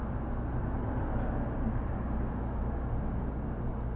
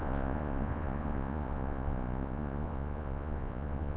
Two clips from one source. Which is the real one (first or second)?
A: first